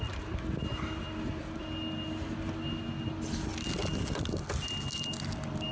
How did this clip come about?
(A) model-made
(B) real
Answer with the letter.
B